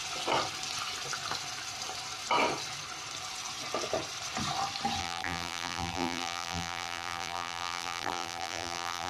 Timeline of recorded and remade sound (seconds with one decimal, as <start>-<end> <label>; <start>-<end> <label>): 0.0-5.0 recorded; 5.0-9.1 remade